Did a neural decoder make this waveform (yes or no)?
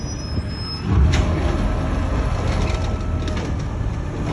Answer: no